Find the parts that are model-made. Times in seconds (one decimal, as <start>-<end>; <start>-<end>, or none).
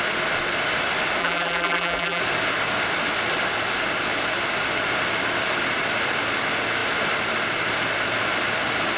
1.2-2.2